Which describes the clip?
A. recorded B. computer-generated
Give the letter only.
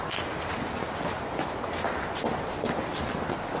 A